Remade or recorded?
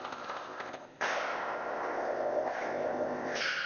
remade